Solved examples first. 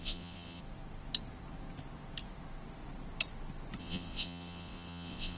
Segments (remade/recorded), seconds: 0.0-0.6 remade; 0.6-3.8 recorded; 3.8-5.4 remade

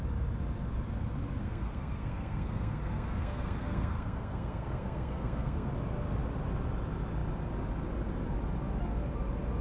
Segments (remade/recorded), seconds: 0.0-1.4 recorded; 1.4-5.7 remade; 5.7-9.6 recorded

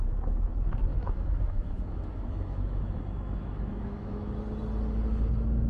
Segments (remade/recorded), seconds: 0.0-0.9 recorded; 0.9-4.3 remade; 4.3-5.7 recorded

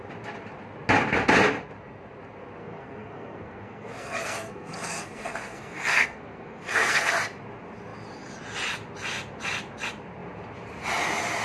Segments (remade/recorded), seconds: 0.0-2.6 recorded; 2.6-7.1 remade; 7.1-11.4 recorded

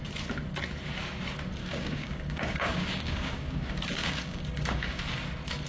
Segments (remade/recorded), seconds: 0.0-1.6 recorded; 1.6-5.0 remade; 5.0-5.7 recorded

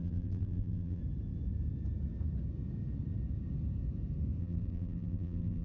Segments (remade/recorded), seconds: 0.0-1.0 remade; 1.0-4.4 recorded; 4.4-5.6 remade

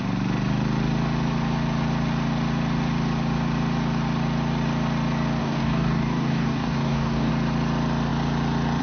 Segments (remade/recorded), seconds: 0.0-5.4 recorded; 5.4-7.3 remade; 7.3-8.8 recorded